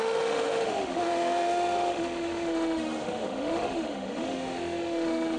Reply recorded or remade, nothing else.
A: remade